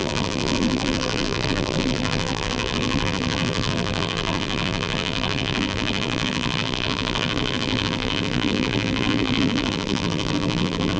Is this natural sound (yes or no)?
no